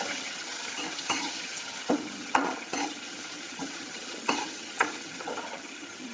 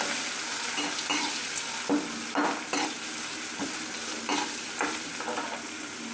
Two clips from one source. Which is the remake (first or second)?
first